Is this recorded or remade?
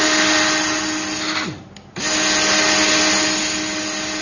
recorded